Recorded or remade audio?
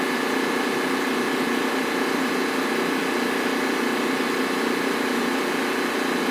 recorded